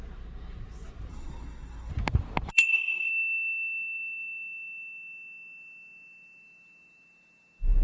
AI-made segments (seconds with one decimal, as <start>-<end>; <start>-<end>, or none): 1.1-1.9; 2.5-3.1